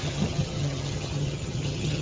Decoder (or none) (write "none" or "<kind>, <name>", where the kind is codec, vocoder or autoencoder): vocoder, HiFi-GAN